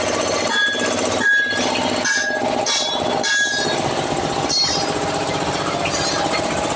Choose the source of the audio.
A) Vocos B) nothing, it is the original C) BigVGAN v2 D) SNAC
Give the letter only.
B